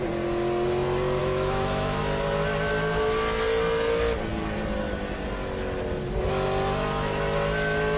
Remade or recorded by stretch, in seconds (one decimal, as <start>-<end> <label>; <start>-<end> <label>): 0.0-1.2 recorded; 1.2-2.0 remade; 2.0-8.0 recorded